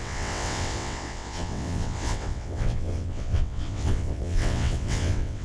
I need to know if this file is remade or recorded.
remade